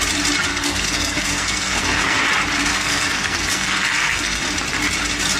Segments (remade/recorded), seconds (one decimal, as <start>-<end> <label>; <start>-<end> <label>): 0.0-0.5 recorded; 0.5-2.3 remade; 2.3-2.7 recorded; 2.7-4.4 remade; 4.4-5.4 recorded